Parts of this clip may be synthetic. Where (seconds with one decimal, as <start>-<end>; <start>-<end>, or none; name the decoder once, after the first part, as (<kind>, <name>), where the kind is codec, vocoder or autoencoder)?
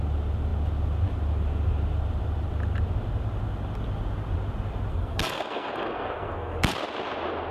4.9-6.7 (codec, SNAC)